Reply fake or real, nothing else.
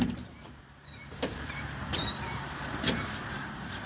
fake